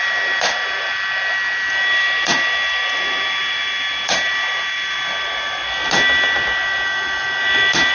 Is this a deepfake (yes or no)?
no